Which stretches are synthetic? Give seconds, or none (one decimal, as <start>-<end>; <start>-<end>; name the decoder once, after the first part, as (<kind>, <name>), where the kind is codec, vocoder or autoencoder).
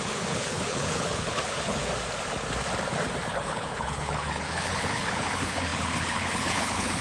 0.0-1.8 (codec, HILCodec); 3.3-7.0